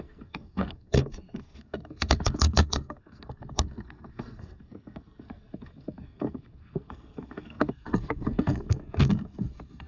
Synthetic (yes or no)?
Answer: yes